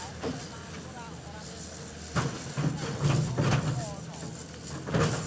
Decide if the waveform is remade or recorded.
recorded